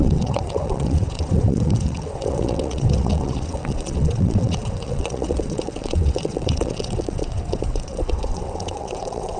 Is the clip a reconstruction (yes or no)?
yes